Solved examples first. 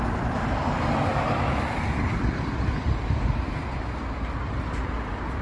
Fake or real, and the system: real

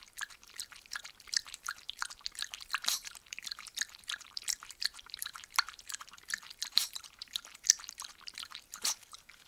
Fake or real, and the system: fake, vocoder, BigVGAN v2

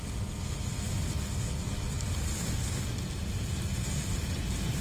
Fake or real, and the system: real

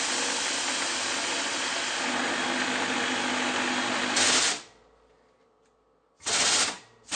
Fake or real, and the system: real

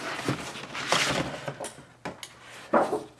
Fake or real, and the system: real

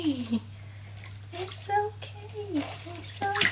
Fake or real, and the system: real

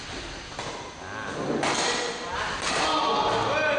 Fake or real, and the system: real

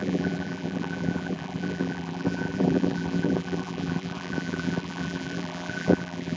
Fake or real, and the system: fake, vocoder, BigVGAN v2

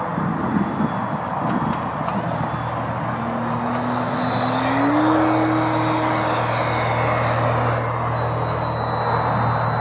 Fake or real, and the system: real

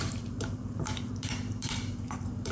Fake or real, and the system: fake, vocoder, BigVGAN v2